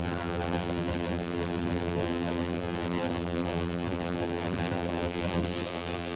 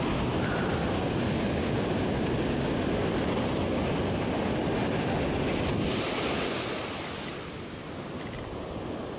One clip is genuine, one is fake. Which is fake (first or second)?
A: first